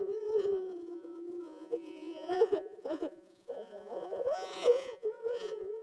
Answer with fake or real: fake